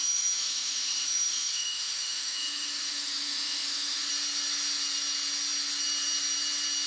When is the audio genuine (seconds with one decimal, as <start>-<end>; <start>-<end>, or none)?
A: 4.1-6.9